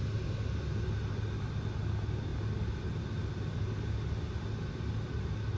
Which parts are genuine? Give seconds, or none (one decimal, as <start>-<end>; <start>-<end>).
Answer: 0.0-5.6